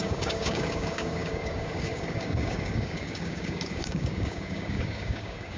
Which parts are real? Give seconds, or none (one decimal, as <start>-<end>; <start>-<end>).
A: none